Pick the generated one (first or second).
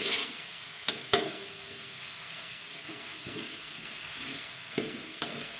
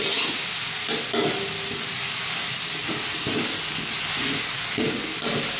first